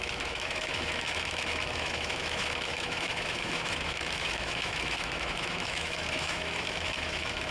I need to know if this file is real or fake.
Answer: fake